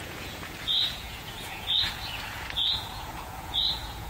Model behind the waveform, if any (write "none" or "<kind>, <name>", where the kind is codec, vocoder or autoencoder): vocoder, Vocos